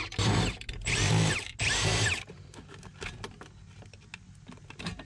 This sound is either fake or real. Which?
real